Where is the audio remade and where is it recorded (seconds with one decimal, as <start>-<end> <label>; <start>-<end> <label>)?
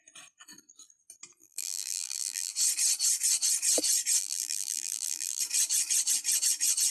0.0-1.4 recorded; 1.4-2.5 remade; 2.5-4.2 recorded; 4.2-5.4 remade; 5.4-6.9 recorded